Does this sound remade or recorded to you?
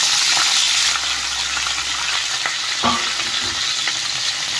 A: recorded